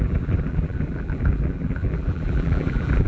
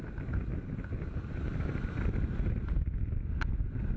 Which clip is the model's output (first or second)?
first